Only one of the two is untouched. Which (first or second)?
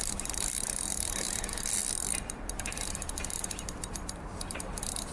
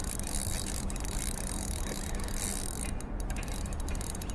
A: second